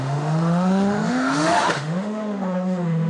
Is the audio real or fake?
fake